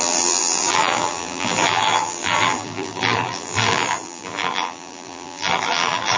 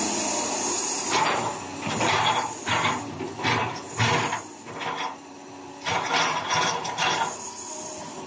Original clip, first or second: second